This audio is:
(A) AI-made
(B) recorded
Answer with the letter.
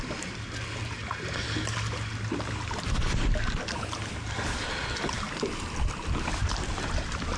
B